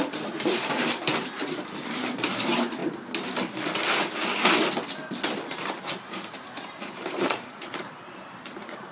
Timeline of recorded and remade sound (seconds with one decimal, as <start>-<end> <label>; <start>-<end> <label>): 0.0-1.1 remade; 1.1-2.3 recorded; 2.3-2.8 remade; 2.8-6.1 recorded; 6.1-8.9 remade